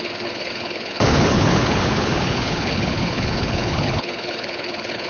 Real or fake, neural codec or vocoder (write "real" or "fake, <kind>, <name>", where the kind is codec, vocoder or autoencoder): fake, codec, HILCodec